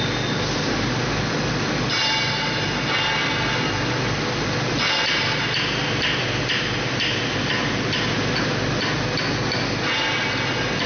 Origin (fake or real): real